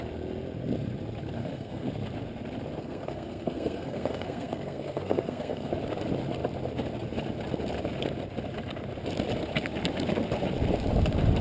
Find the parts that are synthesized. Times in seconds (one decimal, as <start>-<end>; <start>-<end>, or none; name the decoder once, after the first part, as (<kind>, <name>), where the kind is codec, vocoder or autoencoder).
1.4-1.9 (codec, SNAC); 2.8-5.7